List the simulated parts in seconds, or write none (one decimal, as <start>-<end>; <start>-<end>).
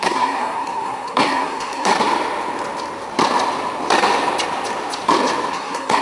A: 0.0-1.9; 5.5-6.0